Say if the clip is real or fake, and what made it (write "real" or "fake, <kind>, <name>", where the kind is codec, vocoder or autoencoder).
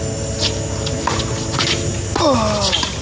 real